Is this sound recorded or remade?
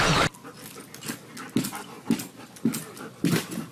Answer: recorded